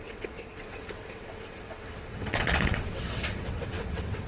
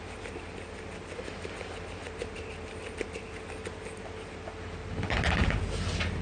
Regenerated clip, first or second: first